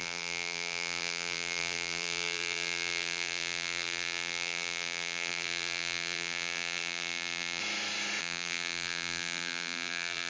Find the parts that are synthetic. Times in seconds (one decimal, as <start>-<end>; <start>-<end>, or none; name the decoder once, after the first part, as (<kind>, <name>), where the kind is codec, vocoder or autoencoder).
0.0-7.6 (vocoder, BigVGAN v2); 8.2-10.3